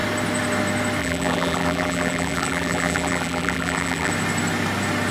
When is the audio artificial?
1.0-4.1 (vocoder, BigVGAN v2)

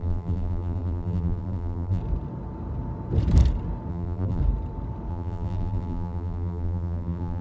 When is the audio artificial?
0.0-2.0 (vocoder, BigVGAN v2); 3.9-4.4; 5.1-7.4